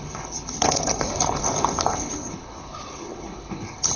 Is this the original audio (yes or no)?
no